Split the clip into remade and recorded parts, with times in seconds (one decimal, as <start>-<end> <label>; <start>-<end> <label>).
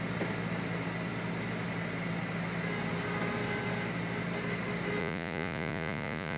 0.0-5.0 recorded; 5.0-6.4 remade